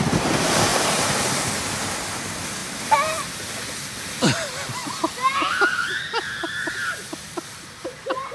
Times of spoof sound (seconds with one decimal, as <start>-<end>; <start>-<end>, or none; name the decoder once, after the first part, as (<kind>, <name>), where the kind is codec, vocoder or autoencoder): 0.7-1.4 (vocoder, BigVGAN v2)